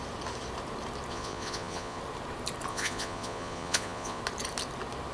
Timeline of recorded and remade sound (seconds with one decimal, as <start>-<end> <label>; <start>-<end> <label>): 0.0-1.1 recorded; 1.1-2.0 remade; 2.0-2.7 recorded; 2.7-4.2 remade; 4.2-5.1 recorded